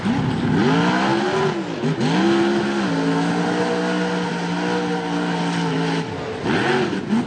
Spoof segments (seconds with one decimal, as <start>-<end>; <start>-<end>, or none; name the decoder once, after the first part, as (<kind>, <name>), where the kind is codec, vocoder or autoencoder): none